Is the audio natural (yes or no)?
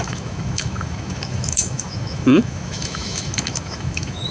no